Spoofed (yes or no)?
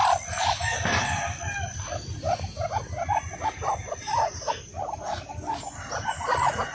no